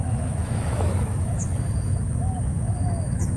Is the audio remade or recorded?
remade